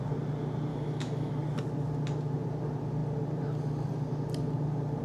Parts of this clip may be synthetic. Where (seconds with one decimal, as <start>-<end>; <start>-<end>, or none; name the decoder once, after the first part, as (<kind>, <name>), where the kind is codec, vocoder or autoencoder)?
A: 0.7-1.3 (autoencoder, DAC-VAE)